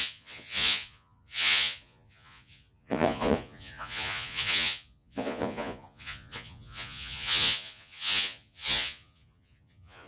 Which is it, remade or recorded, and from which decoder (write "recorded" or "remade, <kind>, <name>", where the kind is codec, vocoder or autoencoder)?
remade, vocoder, Vocos